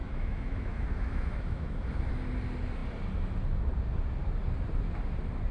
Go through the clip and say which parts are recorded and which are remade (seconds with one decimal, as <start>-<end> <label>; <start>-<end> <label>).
0.0-2.1 remade; 2.1-5.5 recorded